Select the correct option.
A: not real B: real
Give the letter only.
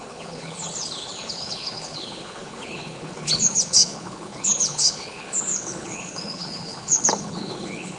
A